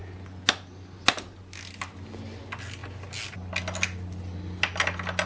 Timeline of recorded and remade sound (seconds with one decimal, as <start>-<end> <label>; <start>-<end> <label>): 0.0-5.3 recorded